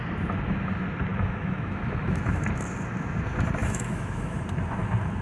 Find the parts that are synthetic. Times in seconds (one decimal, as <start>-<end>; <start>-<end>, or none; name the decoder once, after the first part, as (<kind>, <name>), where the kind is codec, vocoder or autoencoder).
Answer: 1.1-2.4 (autoencoder, DAC-VAE); 3.6-4.4